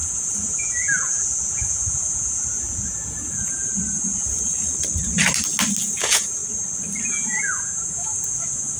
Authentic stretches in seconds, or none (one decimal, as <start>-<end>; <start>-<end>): 3.7-5.8; 6.4-7.1